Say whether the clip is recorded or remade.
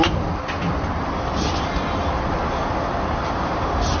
recorded